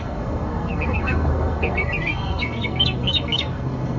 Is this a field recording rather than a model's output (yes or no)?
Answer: no